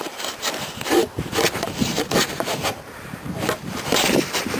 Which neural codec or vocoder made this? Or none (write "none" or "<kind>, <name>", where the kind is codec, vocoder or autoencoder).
vocoder, BigVGAN v2